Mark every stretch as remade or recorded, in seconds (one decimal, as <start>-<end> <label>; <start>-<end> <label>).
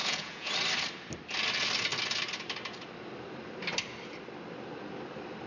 0.0-0.5 remade; 0.5-5.5 recorded